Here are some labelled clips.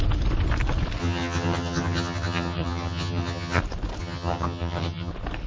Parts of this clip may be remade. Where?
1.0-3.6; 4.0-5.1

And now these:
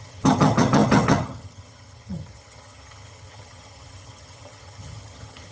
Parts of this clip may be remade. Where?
0.0-5.5

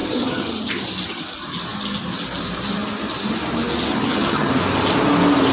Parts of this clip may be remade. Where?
0.0-0.7; 3.9-4.5

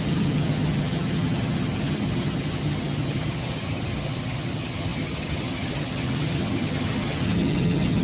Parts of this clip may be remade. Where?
0.0-8.0

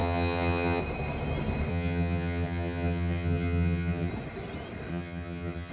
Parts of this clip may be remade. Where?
0.0-0.8; 1.7-4.1; 4.9-5.7

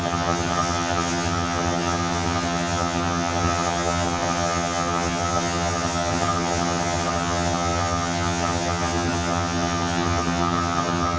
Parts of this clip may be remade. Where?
0.0-11.2

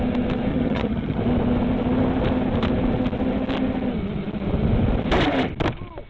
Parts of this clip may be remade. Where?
0.5-1.2